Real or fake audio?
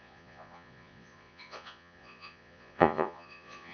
fake